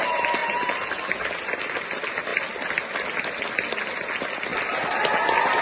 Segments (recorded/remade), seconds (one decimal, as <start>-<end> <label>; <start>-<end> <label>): 0.0-5.6 recorded